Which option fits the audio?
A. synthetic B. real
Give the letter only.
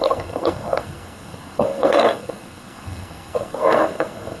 A